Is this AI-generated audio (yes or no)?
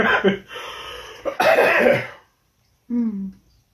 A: no